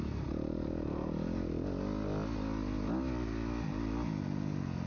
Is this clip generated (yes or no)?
no